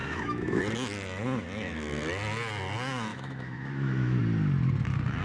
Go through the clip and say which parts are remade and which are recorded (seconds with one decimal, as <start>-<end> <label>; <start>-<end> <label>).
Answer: 0.0-0.6 remade; 0.6-3.1 recorded; 3.1-4.2 remade; 4.2-5.2 recorded